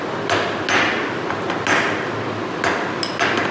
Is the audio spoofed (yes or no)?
no